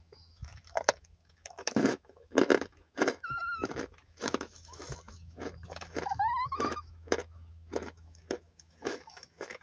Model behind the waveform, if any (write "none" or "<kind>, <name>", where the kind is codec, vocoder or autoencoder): autoencoder, DAC-VAE